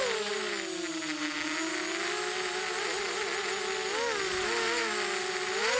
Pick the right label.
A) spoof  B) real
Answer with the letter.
B